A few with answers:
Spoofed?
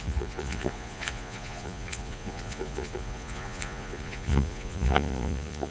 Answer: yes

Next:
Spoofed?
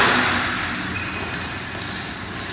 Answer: no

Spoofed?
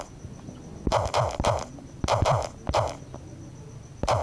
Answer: no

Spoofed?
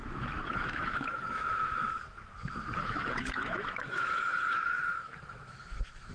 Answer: yes